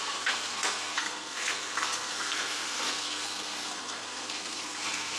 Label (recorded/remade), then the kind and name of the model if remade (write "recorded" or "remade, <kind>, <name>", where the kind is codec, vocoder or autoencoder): remade, codec, SNAC